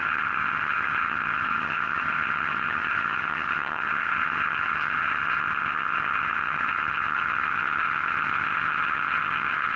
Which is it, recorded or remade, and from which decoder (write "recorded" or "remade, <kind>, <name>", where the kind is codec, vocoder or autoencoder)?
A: remade, vocoder, HiFi-GAN